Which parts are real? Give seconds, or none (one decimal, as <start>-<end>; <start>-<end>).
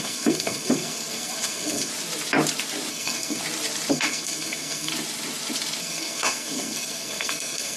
1.9-2.9; 3.4-3.9; 4.9-5.8